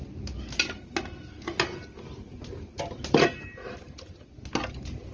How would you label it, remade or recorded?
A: recorded